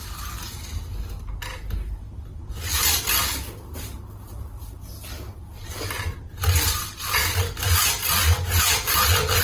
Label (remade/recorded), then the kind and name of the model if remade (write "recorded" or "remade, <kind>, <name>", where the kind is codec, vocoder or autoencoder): recorded